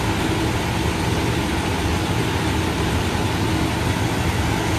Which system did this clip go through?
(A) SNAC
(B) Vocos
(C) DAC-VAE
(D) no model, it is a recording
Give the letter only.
D